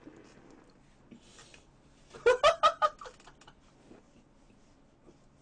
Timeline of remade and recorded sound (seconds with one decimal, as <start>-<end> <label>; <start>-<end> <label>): 0.0-5.4 recorded